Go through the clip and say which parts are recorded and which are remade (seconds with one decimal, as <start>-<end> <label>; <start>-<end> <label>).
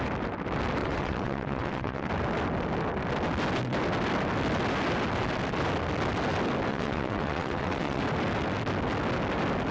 0.0-0.8 recorded; 0.8-2.1 remade; 2.1-6.7 recorded; 6.7-8.0 remade; 8.0-9.7 recorded